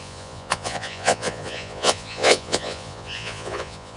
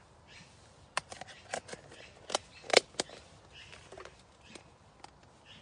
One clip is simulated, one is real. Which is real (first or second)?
second